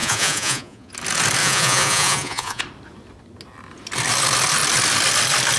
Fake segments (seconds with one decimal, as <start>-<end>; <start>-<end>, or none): 0.0-0.9; 1.4-2.6